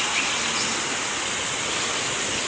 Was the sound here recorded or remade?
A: recorded